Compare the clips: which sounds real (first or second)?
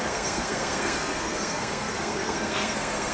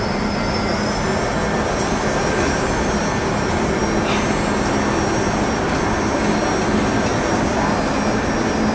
second